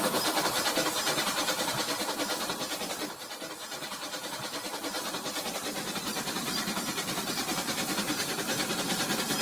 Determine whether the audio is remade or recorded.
remade